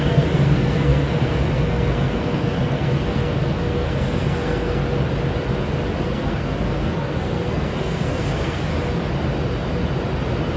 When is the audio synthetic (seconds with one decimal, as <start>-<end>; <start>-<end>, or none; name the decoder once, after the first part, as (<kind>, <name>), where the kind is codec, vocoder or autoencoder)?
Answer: 0.0-4.8 (codec, SNAC); 6.0-8.7